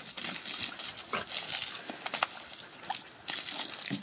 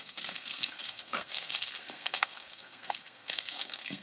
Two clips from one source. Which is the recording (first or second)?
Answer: first